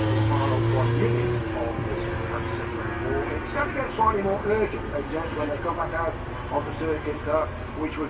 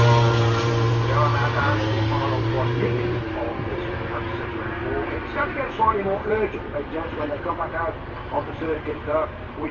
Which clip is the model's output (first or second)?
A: second